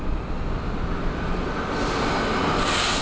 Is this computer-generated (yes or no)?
no